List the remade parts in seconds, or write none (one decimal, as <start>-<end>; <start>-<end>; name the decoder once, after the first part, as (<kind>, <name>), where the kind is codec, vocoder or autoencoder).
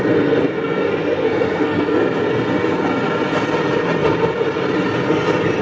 0.0-2.0 (codec, SNAC)